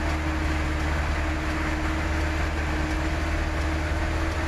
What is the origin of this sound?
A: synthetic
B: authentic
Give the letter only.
B